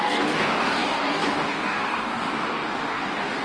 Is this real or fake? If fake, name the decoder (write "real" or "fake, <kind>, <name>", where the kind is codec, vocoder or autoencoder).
fake, codec, DAC